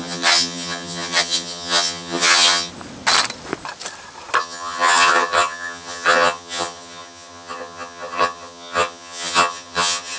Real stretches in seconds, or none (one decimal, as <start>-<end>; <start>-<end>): 2.7-4.4

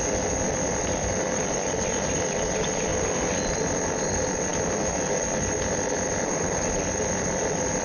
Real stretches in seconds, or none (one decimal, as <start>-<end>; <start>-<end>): 0.0-7.8

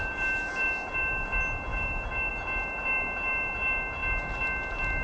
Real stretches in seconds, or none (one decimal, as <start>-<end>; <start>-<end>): 0.0-5.0

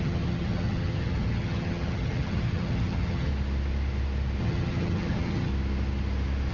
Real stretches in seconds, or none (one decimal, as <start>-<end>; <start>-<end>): 3.3-4.4; 5.5-6.5

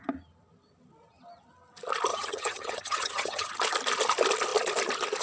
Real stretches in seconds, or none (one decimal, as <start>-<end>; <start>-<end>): 0.0-2.1; 3.5-5.2

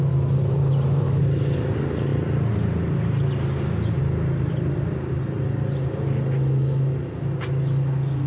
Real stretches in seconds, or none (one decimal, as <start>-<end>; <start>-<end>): 0.0-8.3

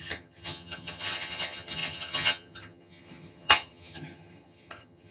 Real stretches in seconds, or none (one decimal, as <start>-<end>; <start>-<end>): none